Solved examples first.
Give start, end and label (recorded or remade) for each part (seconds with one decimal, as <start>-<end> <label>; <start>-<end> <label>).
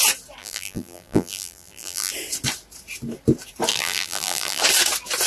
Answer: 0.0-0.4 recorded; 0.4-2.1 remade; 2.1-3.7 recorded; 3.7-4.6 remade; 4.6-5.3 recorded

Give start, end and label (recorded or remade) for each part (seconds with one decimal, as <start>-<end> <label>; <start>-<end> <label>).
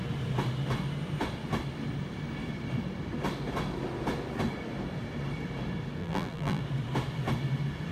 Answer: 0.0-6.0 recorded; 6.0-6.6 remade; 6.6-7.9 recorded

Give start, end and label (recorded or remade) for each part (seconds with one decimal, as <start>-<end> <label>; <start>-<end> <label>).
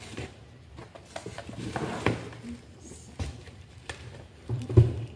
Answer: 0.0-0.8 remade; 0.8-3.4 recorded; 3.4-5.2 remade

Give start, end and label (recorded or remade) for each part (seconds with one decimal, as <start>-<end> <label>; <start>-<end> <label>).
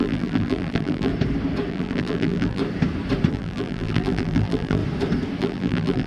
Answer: 0.0-1.1 remade; 1.1-1.7 recorded; 1.7-2.6 remade; 2.6-3.3 recorded; 3.3-4.8 remade; 4.8-5.4 recorded; 5.4-6.1 remade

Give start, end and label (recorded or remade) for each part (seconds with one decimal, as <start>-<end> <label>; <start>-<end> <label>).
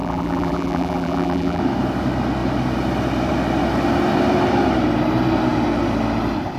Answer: 0.0-1.6 remade; 1.6-6.6 recorded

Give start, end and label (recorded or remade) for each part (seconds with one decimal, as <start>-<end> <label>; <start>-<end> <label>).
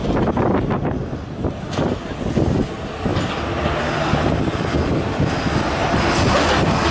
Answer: 0.0-3.1 recorded; 3.1-5.5 remade; 5.5-6.9 recorded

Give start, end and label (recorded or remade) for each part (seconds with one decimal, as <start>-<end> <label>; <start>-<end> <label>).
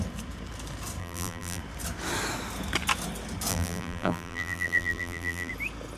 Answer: 0.0-1.0 recorded; 1.0-1.6 remade; 1.6-3.5 recorded; 3.5-5.5 remade; 5.5-6.0 recorded